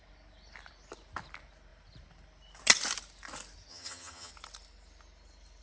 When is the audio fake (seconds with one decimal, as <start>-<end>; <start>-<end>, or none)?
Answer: 3.7-4.3